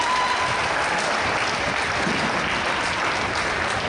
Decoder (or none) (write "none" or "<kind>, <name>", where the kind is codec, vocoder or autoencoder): none